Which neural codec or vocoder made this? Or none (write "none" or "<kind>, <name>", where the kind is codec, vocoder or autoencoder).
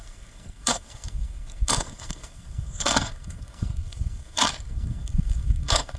codec, SNAC